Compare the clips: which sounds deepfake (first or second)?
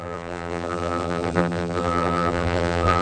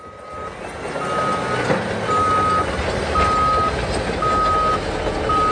first